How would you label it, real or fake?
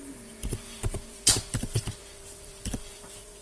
fake